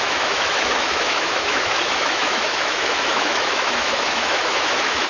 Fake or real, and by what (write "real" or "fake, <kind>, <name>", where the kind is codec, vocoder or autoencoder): fake, autoencoder, DAC-VAE